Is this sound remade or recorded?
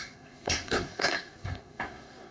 remade